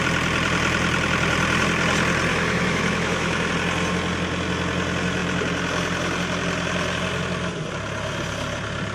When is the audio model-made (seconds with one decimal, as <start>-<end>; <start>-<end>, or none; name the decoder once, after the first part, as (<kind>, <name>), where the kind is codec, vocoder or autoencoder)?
2.3-3.5 (autoencoder, DAC-VAE)